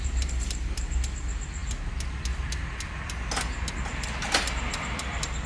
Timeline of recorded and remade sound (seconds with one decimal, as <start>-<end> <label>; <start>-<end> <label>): 0.0-5.5 recorded